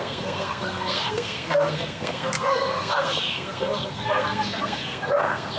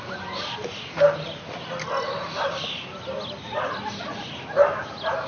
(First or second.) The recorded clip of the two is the second